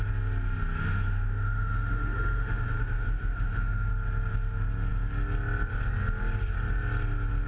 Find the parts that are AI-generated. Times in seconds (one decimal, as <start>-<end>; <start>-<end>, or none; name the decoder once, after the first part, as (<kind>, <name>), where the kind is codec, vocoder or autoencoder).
0.8-3.9 (autoencoder, DAC-VAE)

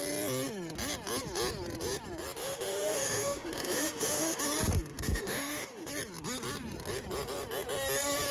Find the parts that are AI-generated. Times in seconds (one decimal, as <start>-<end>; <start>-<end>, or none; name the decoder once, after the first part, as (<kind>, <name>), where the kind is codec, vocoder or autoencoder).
2.4-4.4 (autoencoder, DAC-VAE); 4.9-5.9

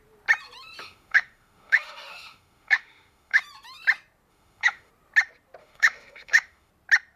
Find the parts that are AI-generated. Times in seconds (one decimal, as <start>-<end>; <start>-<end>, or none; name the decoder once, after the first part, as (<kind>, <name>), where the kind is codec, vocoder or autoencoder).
0.8-3.4 (autoencoder, DAC-VAE); 4.3-4.9; 5.6-6.7

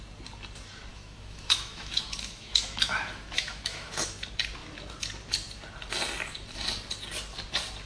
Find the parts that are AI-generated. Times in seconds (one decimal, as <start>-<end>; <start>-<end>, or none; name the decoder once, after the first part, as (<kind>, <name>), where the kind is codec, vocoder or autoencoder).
0.9-3.9 (autoencoder, DAC-VAE)

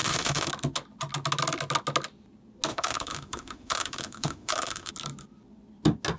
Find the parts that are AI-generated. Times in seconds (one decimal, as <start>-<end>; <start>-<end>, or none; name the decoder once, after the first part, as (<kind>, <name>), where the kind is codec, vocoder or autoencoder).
0.0-0.5 (autoencoder, DAC-VAE); 2.7-4.9

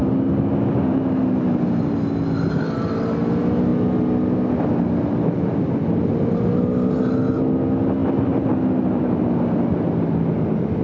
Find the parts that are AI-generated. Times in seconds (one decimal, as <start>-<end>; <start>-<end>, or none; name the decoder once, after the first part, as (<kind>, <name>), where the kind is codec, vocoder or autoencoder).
none

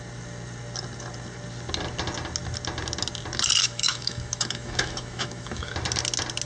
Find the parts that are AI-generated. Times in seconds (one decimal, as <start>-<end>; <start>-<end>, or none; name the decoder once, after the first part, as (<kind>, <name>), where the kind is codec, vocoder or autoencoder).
3.6-5.7 (autoencoder, DAC-VAE)